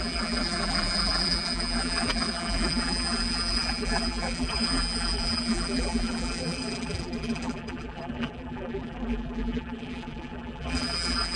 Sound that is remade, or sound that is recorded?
remade